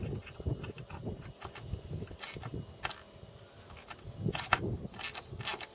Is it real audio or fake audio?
real